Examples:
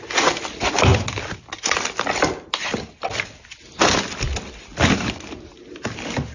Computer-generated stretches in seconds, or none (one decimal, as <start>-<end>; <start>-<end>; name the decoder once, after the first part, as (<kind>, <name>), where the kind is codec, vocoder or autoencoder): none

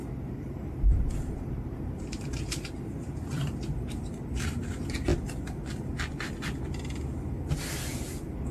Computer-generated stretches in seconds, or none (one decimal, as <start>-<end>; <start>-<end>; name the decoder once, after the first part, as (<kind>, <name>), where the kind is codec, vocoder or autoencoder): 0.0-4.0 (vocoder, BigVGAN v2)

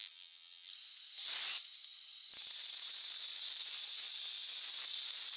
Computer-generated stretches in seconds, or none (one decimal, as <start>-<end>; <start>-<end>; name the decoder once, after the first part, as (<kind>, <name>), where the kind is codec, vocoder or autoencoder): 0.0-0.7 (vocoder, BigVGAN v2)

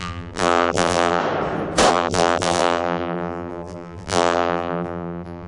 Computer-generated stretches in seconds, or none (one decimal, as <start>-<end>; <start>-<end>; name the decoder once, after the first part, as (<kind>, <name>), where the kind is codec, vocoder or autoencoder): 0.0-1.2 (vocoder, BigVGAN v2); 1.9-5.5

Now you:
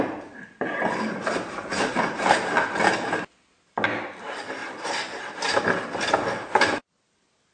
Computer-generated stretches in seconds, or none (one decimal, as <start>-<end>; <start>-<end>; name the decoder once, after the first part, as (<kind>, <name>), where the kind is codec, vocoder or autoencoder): none

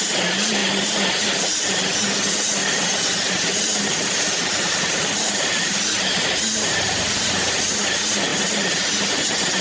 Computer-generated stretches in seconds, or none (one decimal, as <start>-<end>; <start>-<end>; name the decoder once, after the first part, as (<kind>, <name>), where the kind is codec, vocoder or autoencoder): 0.6-1.4 (vocoder, BigVGAN v2); 2.6-7.6